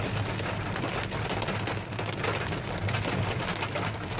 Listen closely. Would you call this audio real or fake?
real